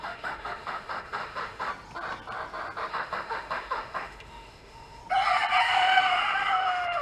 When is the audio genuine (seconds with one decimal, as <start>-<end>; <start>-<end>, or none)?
1.7-2.9; 5.0-5.6